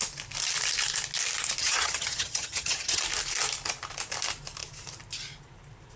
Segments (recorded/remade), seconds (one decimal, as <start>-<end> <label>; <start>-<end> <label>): 0.0-1.6 recorded; 1.6-3.0 remade; 3.0-6.0 recorded